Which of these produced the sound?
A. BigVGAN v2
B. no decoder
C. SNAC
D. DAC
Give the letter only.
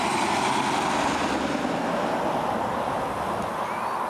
B